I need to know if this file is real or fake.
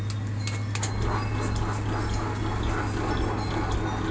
real